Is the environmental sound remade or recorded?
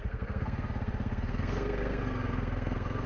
remade